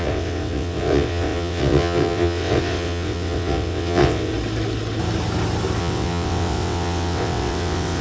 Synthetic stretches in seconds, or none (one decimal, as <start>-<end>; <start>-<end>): 0.0-4.3; 5.8-8.0